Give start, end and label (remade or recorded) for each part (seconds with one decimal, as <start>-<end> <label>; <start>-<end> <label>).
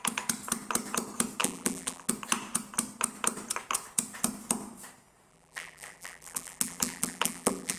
0.0-1.4 recorded; 1.4-2.1 remade; 2.1-5.3 recorded; 5.3-7.8 remade